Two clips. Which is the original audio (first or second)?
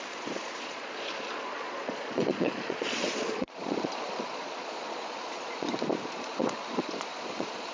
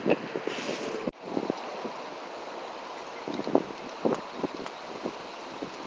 second